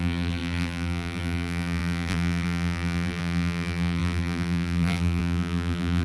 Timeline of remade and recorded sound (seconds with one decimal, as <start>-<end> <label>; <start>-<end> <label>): 0.0-6.0 remade

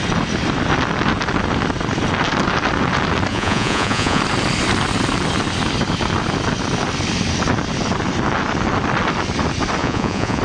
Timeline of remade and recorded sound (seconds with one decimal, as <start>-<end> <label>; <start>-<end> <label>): 0.0-3.3 recorded; 3.3-4.2 remade; 4.2-9.8 recorded; 9.8-10.4 remade

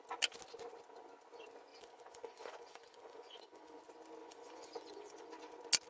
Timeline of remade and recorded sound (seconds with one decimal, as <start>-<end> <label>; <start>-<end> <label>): 0.0-1.7 recorded; 1.7-3.8 remade; 3.8-4.2 recorded; 4.2-5.3 remade; 5.3-5.9 recorded